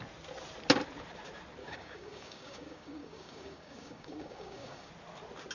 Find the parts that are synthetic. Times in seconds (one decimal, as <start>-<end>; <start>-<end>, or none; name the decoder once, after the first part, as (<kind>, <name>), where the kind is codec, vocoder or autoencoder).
1.6-4.9 (codec, DAC)